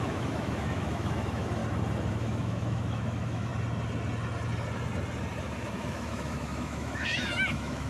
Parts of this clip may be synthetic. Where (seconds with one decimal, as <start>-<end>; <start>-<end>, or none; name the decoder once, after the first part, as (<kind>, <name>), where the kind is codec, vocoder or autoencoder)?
0.0-1.6 (autoencoder, DAC-VAE); 2.1-3.5; 5.4-7.9